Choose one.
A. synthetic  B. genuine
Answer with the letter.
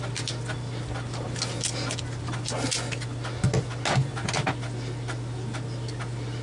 B